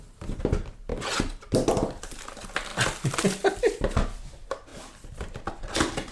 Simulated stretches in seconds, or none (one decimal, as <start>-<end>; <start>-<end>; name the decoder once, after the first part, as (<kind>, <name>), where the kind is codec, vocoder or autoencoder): none